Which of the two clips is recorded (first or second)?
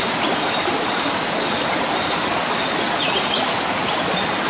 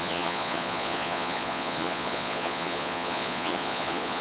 first